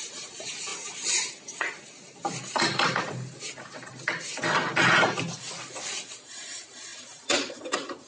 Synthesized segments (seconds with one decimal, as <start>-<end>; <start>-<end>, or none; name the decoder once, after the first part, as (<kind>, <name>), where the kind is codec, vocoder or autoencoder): 0.0-0.7 (vocoder, BigVGAN v2); 5.6-8.1